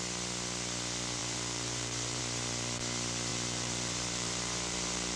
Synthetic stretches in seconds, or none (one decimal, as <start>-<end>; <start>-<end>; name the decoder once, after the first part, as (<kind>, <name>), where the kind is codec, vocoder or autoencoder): 1.2-2.2 (vocoder, BigVGAN v2); 3.3-5.2